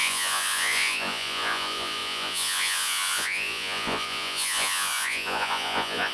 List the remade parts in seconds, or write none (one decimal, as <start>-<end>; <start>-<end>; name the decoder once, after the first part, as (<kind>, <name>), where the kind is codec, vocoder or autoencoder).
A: 0.0-6.1 (vocoder, Vocos)